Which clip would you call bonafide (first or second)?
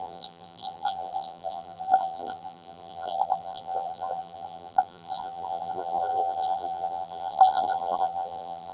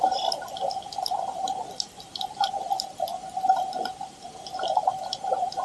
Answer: second